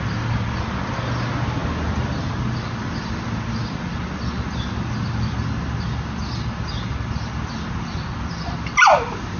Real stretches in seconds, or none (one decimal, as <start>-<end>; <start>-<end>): 0.0-9.4

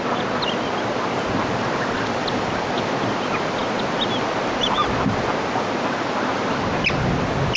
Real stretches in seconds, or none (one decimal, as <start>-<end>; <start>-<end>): 0.0-7.6

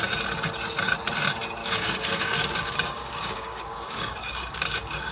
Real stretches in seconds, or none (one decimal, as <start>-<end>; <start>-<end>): 0.0-1.6

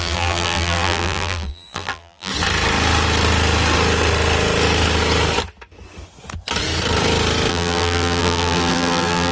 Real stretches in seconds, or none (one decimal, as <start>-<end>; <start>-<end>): 2.3-7.5

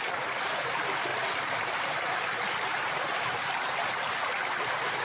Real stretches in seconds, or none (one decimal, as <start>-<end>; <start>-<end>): 0.0-5.0

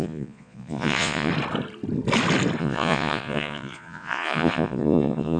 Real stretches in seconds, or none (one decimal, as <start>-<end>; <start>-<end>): 1.3-2.6

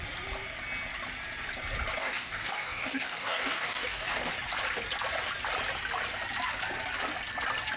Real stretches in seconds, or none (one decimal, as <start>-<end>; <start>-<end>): 0.0-2.0; 4.3-7.8